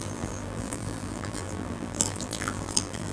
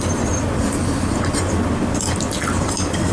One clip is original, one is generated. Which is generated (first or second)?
first